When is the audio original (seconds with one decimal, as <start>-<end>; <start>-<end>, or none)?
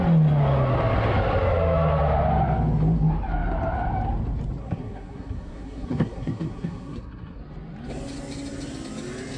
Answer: 0.0-4.6; 7.4-9.4